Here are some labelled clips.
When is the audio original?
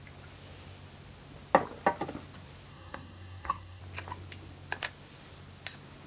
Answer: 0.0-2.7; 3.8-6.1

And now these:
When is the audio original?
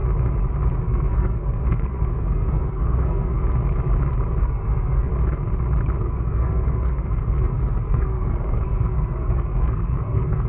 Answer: 0.0-0.7; 3.4-4.4; 5.1-6.0